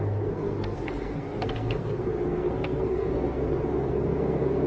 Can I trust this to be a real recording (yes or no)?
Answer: no